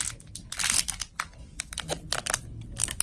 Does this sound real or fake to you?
real